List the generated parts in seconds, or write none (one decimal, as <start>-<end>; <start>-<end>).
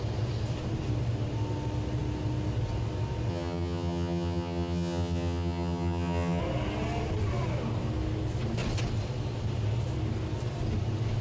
3.3-6.4